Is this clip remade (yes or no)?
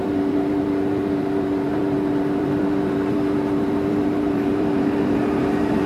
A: yes